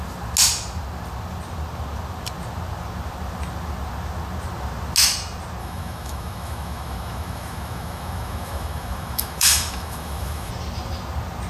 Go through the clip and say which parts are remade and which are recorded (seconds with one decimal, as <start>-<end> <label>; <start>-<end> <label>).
0.0-5.6 recorded; 5.6-10.5 remade; 10.5-11.5 recorded